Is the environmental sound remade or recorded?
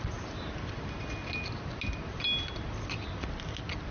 recorded